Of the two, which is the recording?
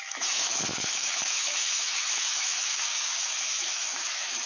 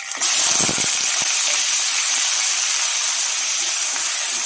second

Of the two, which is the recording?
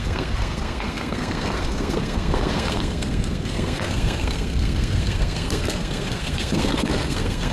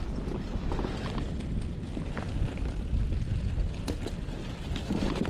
second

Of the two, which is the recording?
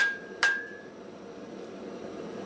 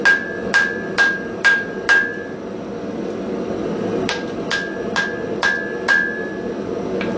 second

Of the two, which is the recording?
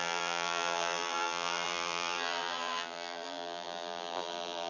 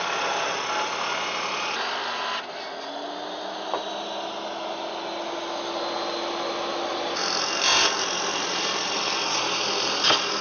second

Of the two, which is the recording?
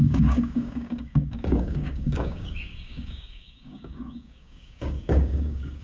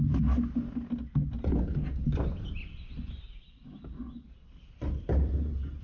second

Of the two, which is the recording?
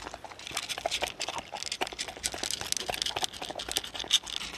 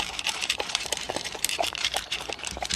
first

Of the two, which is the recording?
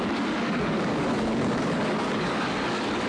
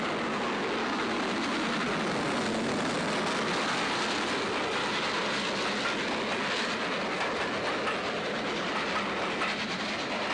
second